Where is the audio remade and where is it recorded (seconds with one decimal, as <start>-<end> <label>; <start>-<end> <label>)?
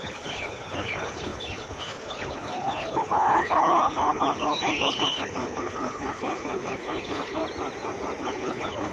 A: 0.0-7.4 remade; 7.4-8.2 recorded; 8.2-8.9 remade